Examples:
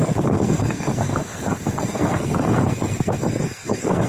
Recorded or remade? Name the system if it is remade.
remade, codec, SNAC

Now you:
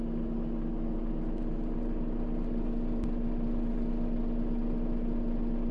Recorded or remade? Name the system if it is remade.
recorded